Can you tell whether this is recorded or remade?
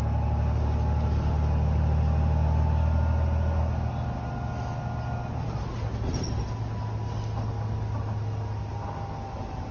recorded